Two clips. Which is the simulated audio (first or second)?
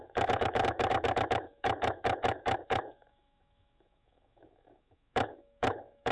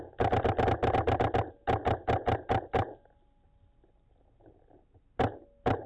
first